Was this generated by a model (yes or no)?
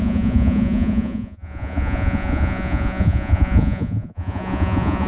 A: yes